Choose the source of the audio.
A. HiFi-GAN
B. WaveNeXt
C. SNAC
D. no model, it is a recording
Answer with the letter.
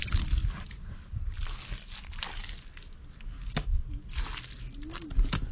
D